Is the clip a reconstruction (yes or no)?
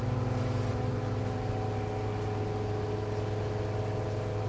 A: no